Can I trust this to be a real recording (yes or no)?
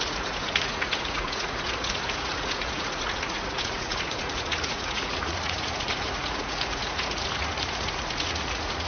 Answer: no